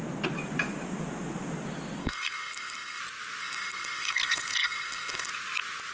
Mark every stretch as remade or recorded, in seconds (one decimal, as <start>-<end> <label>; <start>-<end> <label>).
0.0-2.0 recorded; 2.0-3.0 remade; 3.0-3.4 recorded; 3.4-5.3 remade; 5.3-5.9 recorded